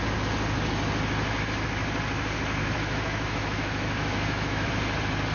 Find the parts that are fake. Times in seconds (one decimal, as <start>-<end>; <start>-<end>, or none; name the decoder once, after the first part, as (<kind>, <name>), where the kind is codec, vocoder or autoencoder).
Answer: 2.6-4.7 (autoencoder, DAC-VAE)